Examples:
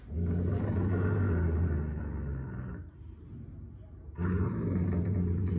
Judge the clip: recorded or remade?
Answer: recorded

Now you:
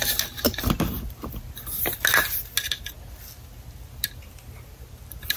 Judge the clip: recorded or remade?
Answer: recorded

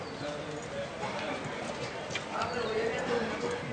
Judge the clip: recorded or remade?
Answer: recorded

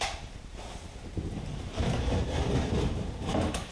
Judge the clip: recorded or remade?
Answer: remade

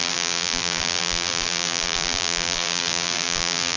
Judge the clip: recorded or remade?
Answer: remade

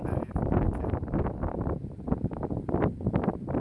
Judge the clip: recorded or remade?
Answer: recorded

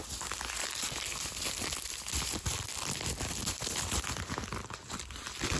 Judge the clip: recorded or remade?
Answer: remade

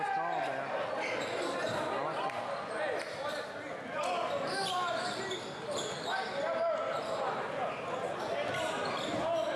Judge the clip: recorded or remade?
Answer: recorded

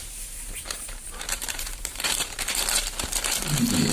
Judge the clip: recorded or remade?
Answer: remade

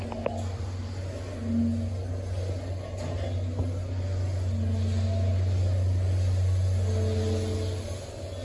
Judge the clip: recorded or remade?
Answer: recorded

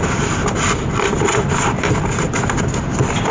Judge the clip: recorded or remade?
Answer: remade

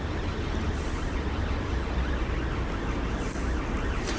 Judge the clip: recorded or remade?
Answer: recorded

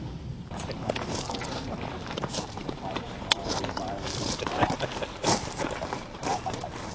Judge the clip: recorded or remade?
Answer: remade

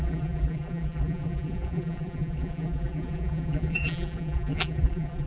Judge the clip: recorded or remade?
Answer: remade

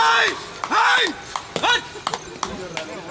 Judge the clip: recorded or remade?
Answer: recorded